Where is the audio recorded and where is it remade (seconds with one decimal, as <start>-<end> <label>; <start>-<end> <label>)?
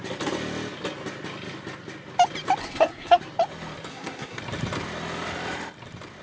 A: 0.0-2.6 recorded; 2.6-3.2 remade; 3.2-3.9 recorded; 3.9-4.4 remade; 4.4-6.2 recorded